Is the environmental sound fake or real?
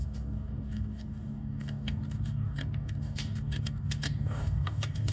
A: fake